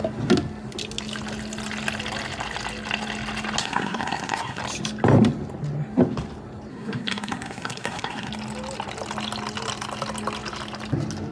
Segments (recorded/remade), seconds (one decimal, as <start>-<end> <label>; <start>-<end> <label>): 0.0-3.6 recorded; 3.6-4.6 remade; 4.6-6.7 recorded; 6.7-8.3 remade; 8.3-11.3 recorded